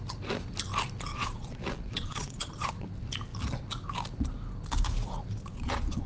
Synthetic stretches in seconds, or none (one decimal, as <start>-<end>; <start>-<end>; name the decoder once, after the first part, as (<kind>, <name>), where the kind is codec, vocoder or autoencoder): 1.1-2.7 (vocoder, Vocos); 5.4-6.1